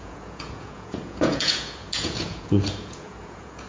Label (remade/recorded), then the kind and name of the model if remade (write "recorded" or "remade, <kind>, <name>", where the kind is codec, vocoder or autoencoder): remade, vocoder, Vocos